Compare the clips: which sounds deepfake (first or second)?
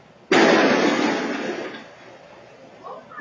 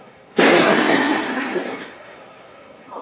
second